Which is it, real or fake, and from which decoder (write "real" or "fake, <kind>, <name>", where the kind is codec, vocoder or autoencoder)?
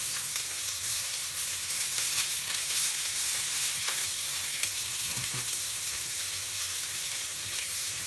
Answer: fake, codec, SNAC